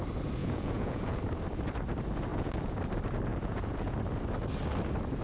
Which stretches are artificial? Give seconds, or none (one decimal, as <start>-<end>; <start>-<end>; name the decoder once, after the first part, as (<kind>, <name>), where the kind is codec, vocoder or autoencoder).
0.4-1.2 (vocoder, Vocos); 2.3-2.8; 3.3-4.0